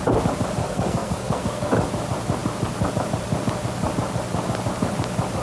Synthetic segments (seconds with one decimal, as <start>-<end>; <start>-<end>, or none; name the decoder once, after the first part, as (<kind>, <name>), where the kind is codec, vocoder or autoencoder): 0.6-1.7 (codec, SNAC)

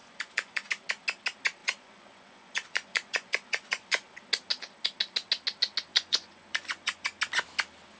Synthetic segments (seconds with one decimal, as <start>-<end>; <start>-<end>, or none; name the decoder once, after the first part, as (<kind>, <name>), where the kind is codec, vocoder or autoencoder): 0.0-0.7 (vocoder, Vocos); 1.6-4.2; 5.9-7.2

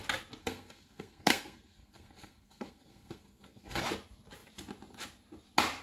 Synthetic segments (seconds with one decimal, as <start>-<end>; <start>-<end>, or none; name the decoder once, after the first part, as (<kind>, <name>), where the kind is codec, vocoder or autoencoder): 0.4-3.8 (codec, SNAC)